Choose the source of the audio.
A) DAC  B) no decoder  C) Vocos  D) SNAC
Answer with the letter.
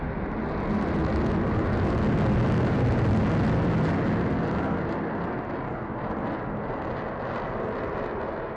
B